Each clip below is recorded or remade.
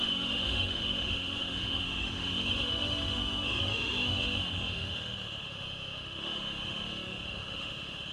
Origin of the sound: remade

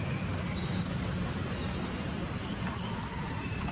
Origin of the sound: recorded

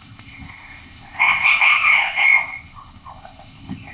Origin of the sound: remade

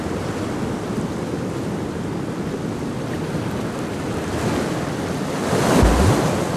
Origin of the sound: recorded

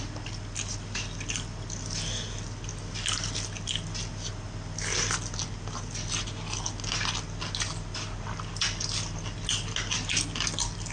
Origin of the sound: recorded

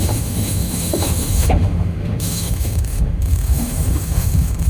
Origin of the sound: remade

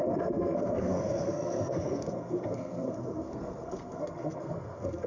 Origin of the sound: remade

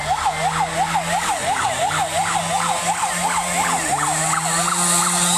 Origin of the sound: recorded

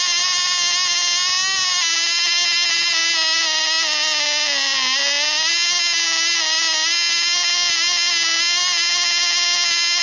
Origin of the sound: recorded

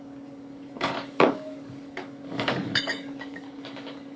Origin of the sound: remade